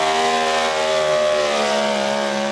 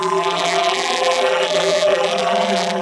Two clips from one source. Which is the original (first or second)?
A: first